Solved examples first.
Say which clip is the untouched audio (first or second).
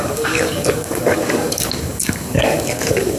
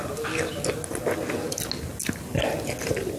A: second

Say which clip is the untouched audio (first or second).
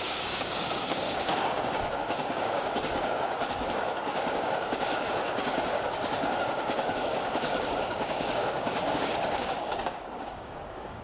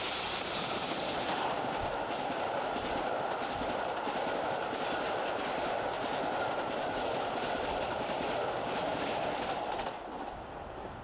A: second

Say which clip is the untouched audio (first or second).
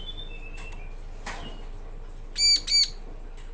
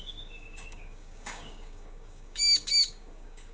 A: first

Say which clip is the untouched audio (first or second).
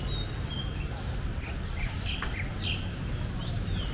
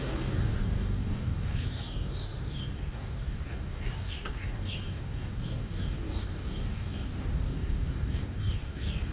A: first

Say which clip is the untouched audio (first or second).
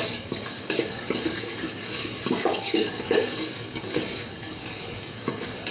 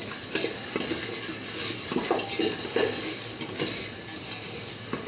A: second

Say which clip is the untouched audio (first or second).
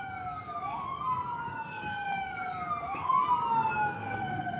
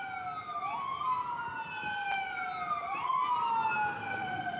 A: second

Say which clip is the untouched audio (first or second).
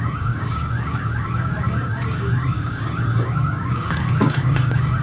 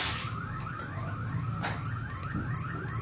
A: second